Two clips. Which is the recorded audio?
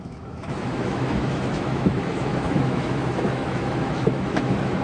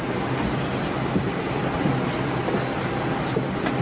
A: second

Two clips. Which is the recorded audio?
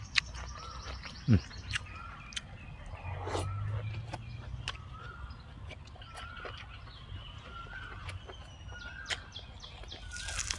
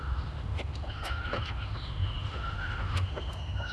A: first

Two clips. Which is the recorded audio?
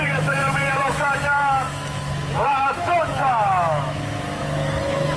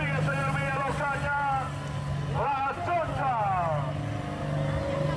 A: second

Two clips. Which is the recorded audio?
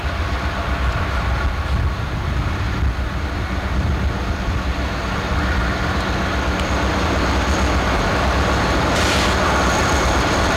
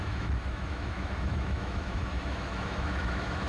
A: first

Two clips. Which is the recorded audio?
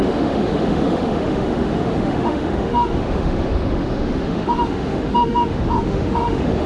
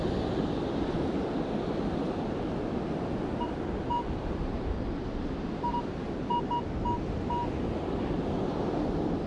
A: second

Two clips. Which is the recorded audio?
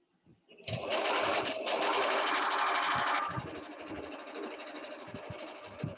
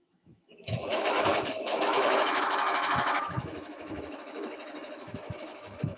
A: first